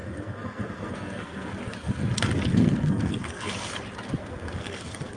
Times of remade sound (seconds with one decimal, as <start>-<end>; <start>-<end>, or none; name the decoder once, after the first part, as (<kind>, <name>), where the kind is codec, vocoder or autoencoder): 0.0-1.5 (codec, SNAC); 2.5-3.5; 4.2-5.2